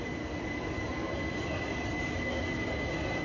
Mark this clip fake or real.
real